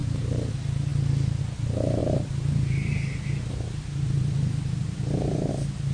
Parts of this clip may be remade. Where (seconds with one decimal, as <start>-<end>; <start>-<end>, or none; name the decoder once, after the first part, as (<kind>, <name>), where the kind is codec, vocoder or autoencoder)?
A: 0.0-0.5 (vocoder, BigVGAN v2); 2.0-5.5